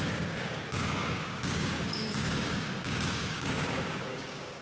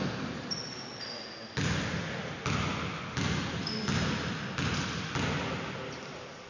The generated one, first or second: first